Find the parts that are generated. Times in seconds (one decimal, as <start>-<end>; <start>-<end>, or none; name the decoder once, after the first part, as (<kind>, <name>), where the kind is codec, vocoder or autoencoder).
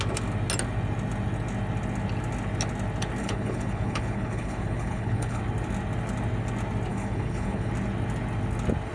3.2-5.4 (codec, HILCodec); 6.9-7.7